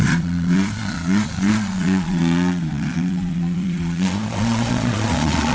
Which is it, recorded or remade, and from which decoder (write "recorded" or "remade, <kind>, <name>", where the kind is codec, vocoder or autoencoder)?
remade, vocoder, Vocos